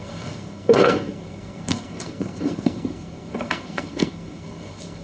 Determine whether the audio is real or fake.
fake